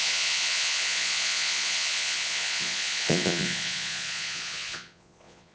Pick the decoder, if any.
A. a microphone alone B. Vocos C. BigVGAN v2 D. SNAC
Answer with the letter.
B